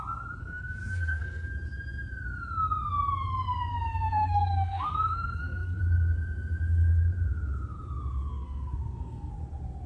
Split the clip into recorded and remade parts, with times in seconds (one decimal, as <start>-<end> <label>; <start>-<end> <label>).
0.0-0.4 recorded; 0.4-1.5 remade; 1.5-3.7 recorded; 3.7-5.8 remade; 5.8-8.3 recorded; 8.3-9.3 remade; 9.3-9.9 recorded